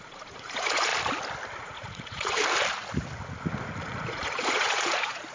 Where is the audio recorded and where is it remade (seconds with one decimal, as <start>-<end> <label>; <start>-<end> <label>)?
0.0-0.9 remade; 0.9-1.6 recorded; 1.6-2.4 remade; 2.4-3.9 recorded; 3.9-5.3 remade